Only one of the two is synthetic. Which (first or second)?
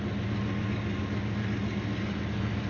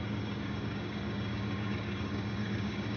second